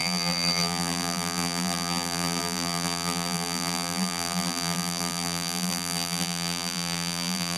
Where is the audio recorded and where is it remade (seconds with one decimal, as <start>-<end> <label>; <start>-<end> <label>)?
0.0-7.6 remade